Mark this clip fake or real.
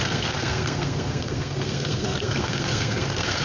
fake